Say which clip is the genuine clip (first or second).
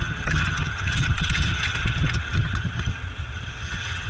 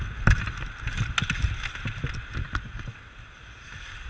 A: second